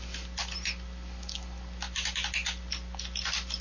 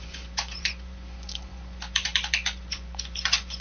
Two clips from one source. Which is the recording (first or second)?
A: first